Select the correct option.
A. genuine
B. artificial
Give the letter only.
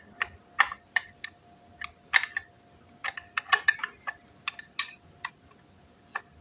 A